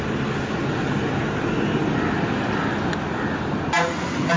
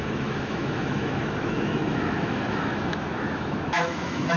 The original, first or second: first